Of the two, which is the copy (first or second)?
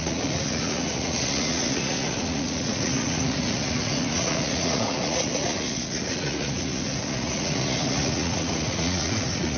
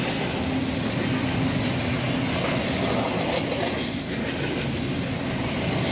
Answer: first